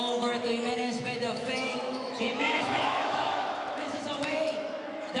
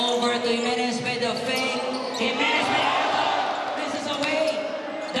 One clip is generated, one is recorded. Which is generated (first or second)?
first